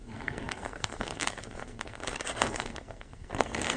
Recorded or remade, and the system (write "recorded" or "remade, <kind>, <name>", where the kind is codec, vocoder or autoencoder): remade, codec, SNAC